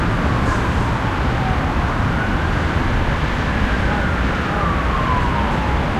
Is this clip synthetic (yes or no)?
no